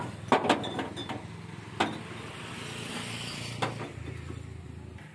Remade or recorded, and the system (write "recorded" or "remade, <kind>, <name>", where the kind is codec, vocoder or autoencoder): recorded